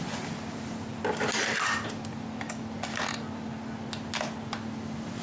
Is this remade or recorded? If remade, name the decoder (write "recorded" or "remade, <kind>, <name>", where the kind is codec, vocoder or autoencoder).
recorded